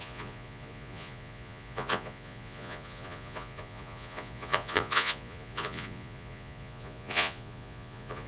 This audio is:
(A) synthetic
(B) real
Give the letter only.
A